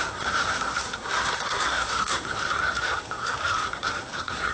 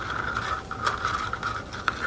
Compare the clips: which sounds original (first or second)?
second